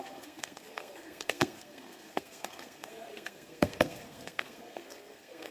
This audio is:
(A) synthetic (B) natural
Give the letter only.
A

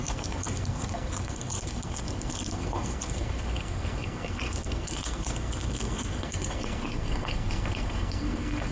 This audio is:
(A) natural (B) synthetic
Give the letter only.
B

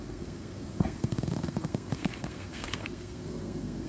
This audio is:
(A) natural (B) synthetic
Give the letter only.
B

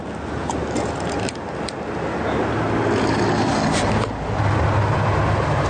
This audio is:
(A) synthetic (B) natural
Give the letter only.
B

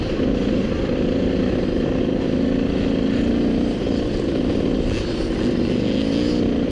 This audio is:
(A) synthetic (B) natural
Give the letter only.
B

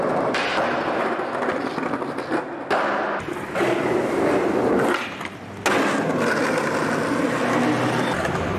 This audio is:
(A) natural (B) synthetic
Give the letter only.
A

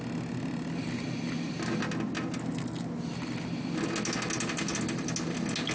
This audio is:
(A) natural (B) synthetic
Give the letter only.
A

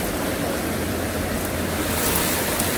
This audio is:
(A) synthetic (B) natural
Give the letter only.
B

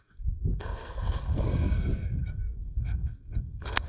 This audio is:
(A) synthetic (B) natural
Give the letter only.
A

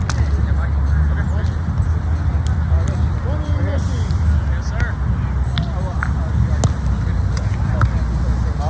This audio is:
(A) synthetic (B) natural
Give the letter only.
B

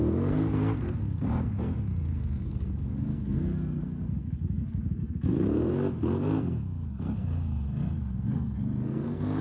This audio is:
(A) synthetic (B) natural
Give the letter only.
A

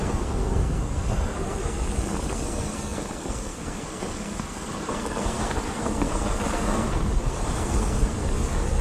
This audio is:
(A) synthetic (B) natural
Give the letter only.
A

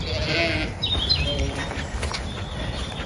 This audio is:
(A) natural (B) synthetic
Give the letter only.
A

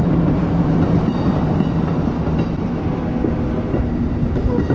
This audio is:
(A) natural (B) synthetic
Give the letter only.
A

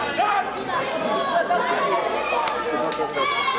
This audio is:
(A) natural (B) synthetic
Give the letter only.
A